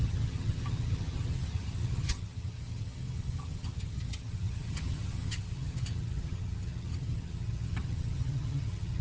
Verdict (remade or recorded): remade